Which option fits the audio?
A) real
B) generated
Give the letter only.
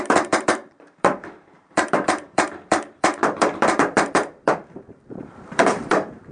B